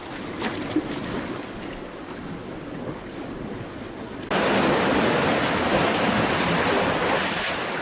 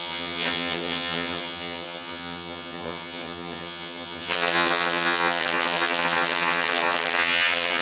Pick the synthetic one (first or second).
second